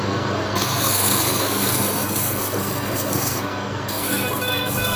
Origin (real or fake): fake